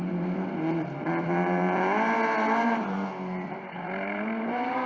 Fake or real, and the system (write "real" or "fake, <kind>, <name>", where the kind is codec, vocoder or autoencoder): real